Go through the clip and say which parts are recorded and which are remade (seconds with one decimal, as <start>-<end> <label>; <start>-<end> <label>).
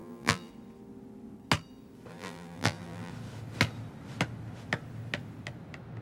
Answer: 0.0-0.5 remade; 0.5-2.1 recorded; 2.1-3.1 remade; 3.1-6.0 recorded